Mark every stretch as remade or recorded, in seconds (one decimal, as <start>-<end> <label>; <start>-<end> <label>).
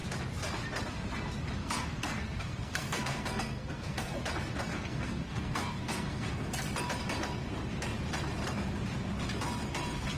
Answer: 0.0-1.6 recorded; 1.6-4.2 remade; 4.2-4.7 recorded; 4.7-6.5 remade; 6.5-10.2 recorded